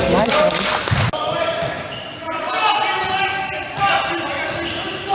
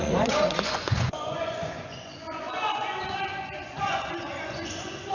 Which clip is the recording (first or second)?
first